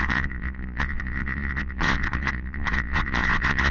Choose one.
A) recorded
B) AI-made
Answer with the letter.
B